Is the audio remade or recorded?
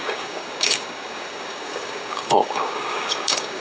remade